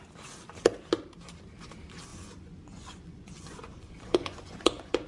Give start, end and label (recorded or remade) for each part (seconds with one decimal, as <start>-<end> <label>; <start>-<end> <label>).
0.0-2.1 recorded; 2.1-5.1 remade

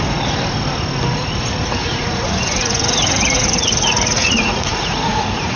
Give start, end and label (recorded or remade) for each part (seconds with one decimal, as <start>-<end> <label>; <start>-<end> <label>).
0.0-1.8 recorded; 1.8-5.6 remade